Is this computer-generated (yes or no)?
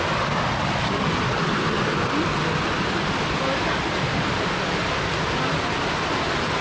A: no